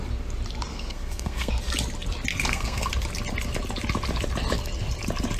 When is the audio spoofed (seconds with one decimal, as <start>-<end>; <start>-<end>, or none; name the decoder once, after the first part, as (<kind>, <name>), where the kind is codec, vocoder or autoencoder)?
0.7-1.5 (codec, SNAC); 2.3-2.9